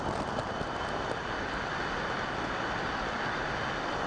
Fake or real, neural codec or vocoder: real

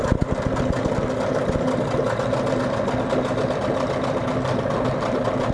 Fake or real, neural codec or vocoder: real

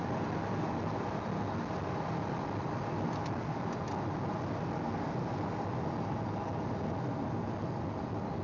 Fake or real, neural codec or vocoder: real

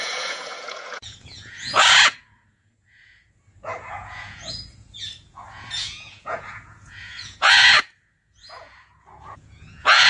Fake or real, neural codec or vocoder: fake, vocoder, Vocos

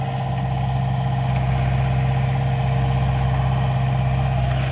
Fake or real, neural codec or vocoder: real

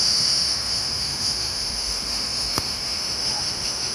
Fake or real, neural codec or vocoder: fake, autoencoder, DAC-VAE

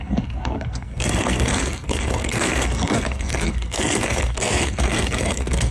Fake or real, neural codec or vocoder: fake, codec, SNAC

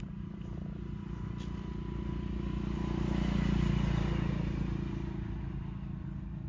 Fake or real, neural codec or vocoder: real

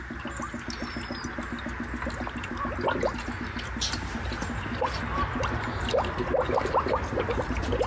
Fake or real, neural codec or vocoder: real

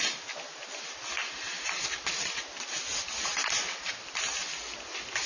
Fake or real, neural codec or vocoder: real